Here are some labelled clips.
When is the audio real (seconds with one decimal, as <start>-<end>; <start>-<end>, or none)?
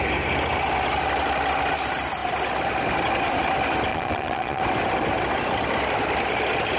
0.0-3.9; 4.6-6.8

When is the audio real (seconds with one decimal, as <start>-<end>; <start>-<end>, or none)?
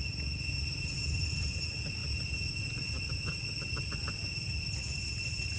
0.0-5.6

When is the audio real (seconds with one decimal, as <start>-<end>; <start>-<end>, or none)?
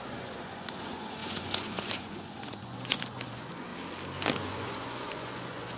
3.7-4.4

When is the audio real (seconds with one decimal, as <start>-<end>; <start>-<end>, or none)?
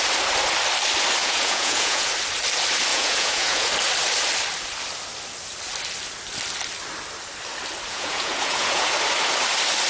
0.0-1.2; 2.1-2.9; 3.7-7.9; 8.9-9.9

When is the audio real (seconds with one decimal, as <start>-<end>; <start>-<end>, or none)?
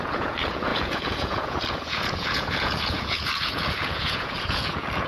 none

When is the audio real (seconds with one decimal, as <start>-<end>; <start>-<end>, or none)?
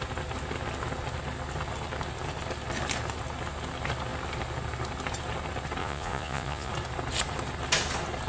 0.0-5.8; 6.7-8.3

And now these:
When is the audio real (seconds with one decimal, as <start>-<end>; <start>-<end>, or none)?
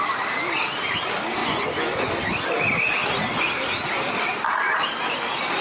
0.0-1.4; 2.1-5.6